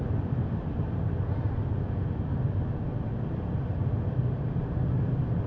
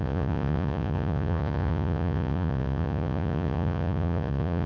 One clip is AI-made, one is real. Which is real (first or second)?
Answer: first